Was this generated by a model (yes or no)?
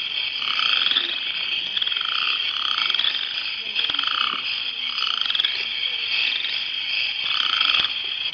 no